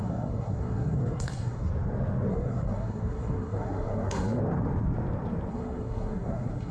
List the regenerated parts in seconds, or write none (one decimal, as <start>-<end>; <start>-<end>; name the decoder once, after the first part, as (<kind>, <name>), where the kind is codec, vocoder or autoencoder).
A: 0.0-1.7 (codec, SNAC); 2.3-4.4; 5.5-6.7